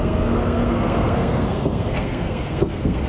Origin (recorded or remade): remade